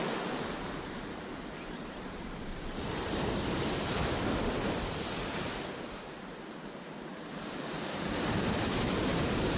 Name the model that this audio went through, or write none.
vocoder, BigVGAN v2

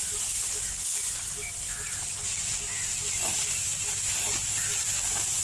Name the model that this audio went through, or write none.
none